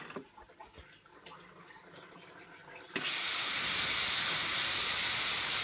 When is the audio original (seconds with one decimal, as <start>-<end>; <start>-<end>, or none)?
0.0-1.1; 4.5-5.6